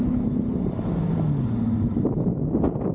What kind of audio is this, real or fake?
real